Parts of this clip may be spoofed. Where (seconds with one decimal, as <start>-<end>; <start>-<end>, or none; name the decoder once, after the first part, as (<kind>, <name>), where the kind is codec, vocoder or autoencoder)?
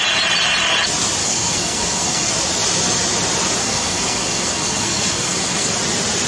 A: 1.2-2.3 (codec, SNAC); 3.6-5.7